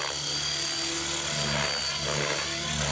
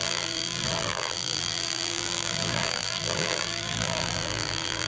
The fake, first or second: second